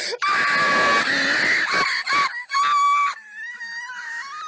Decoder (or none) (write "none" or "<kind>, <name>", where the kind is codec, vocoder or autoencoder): none